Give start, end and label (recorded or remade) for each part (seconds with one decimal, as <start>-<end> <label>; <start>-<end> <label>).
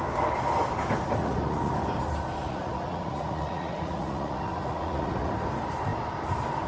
0.0-1.2 recorded; 1.2-1.7 remade; 1.7-2.4 recorded; 2.4-5.3 remade; 5.3-6.7 recorded